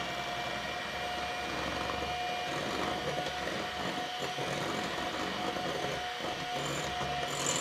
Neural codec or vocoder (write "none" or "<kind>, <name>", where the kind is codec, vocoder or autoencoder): none